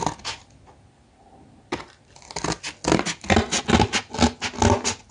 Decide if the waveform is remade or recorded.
recorded